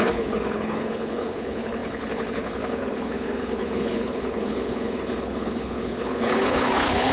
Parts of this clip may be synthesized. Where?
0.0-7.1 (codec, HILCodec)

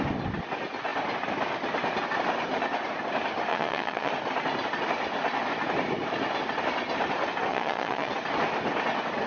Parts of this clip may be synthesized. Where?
3.5-4.1 (vocoder, Vocos); 7.5-8.1

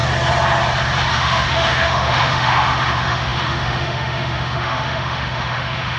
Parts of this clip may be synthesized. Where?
1.1-6.0 (autoencoder, DAC-VAE)